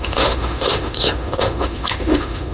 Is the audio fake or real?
fake